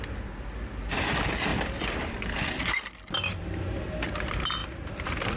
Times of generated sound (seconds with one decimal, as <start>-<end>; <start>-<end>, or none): 1.5-3.6